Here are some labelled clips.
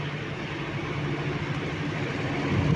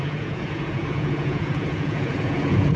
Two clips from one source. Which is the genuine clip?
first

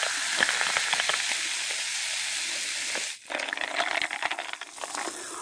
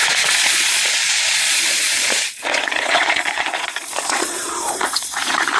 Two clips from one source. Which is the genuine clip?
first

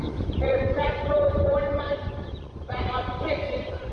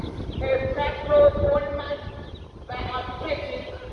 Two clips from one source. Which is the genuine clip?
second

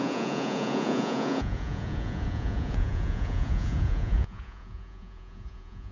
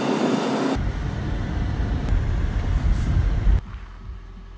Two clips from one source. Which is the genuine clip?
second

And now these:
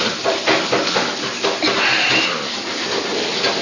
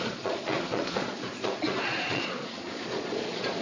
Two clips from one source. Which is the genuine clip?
first